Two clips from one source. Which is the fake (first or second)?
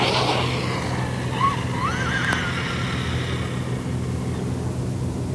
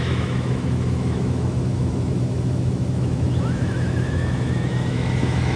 second